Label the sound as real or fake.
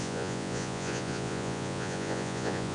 fake